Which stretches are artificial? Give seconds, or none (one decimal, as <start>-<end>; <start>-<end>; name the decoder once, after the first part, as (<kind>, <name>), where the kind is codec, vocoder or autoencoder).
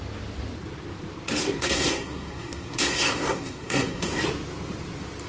1.4-4.2 (codec, SNAC)